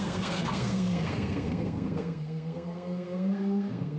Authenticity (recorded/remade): remade